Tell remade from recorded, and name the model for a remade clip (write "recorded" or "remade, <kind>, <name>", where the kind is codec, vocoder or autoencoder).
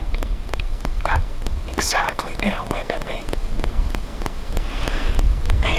remade, codec, SNAC